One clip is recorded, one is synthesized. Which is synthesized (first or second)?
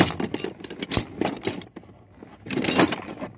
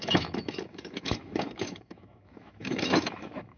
second